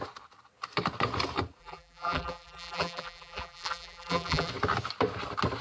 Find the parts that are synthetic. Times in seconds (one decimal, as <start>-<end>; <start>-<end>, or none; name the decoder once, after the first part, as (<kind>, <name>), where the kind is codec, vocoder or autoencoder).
1.6-4.5 (vocoder, BigVGAN v2)